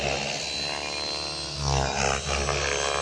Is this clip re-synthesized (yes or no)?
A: no